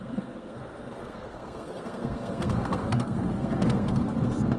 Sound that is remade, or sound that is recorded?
remade